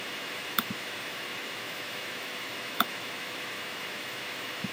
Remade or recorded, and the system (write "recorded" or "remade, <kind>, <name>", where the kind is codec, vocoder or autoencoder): remade, autoencoder, DAC-VAE